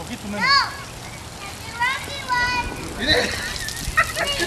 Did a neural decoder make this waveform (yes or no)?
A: no